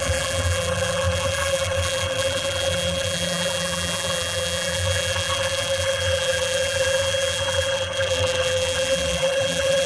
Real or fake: fake